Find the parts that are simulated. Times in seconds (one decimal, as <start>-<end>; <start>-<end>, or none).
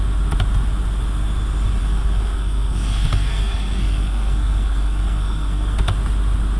1.8-5.8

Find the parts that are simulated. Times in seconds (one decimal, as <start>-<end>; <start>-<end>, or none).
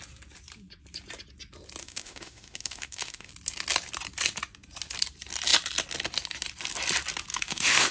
1.8-3.3; 7.3-7.9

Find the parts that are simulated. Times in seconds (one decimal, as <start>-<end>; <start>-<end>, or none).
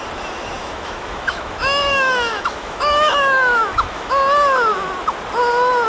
0.6-4.1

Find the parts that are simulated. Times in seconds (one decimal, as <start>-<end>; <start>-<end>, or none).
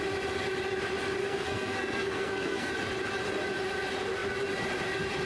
1.2-2.7